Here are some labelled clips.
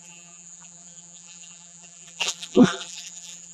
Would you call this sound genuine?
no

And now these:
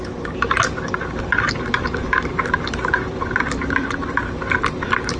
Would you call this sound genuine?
no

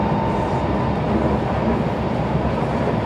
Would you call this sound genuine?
yes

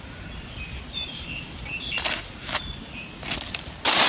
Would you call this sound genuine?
yes